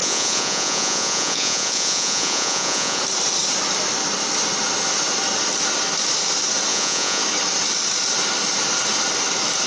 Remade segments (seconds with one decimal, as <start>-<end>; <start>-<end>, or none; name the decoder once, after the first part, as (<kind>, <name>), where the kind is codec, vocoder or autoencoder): 0.0-3.0 (vocoder, Vocos); 6.7-7.2